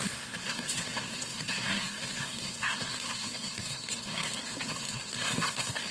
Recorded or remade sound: remade